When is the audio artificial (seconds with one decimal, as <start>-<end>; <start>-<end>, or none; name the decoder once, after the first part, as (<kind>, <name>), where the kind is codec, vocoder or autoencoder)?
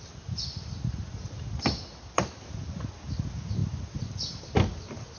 none